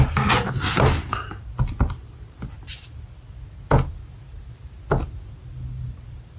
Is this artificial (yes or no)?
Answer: no